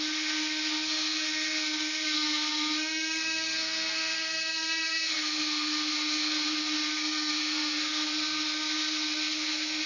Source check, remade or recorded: remade